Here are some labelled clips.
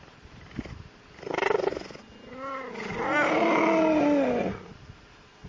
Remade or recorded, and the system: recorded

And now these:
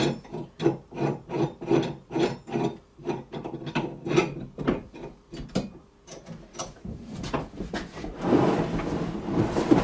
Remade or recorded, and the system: remade, vocoder, BigVGAN v2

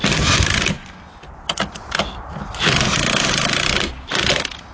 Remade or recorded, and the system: recorded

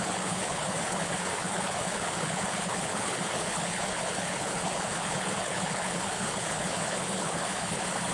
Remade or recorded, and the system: remade, codec, HILCodec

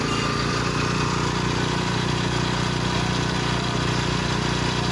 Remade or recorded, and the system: recorded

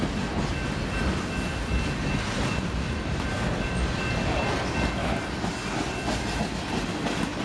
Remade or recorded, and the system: recorded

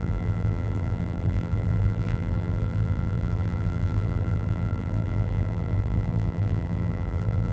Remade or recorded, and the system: remade, vocoder, BigVGAN v2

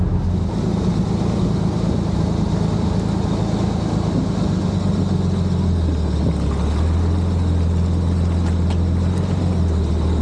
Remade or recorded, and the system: recorded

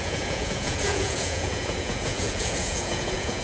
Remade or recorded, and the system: remade, vocoder, Vocos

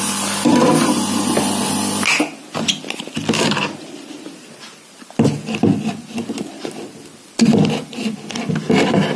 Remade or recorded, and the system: recorded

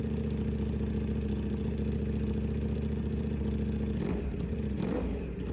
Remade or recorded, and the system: recorded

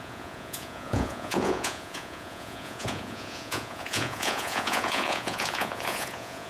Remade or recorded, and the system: remade, vocoder, Vocos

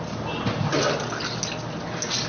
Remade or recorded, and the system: recorded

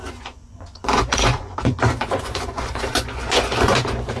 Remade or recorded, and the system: remade, vocoder, Vocos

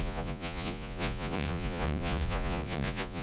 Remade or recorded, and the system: remade, vocoder, Vocos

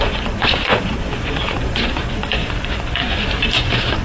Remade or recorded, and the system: remade, vocoder, Vocos